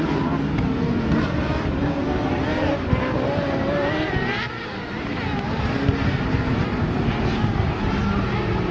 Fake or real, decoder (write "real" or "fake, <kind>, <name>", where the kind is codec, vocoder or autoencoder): fake, vocoder, BigVGAN v2